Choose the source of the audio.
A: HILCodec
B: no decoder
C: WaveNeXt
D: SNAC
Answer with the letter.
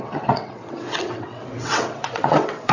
C